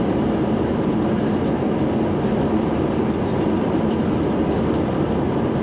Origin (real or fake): real